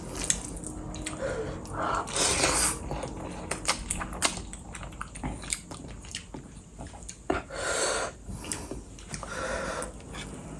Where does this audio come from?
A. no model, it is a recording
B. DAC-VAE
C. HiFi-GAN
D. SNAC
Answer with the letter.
A